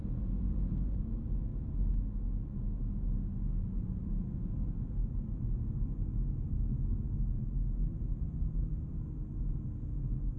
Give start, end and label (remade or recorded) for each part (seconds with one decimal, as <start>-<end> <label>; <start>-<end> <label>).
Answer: 0.0-10.4 recorded